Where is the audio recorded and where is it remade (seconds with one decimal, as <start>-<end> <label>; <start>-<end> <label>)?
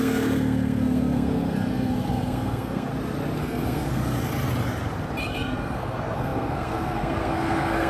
0.0-2.9 remade; 2.9-3.4 recorded; 3.4-4.0 remade; 4.0-5.2 recorded; 5.2-7.9 remade